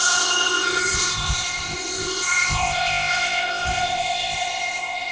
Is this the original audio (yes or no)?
no